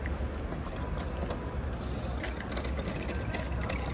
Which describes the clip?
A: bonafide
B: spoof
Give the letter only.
A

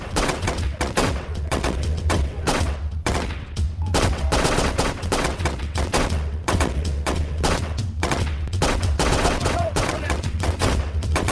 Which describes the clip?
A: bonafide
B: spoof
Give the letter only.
B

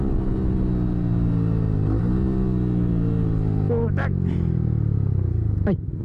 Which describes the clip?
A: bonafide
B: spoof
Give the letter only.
A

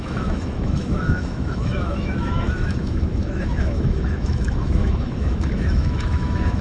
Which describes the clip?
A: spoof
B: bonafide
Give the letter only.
A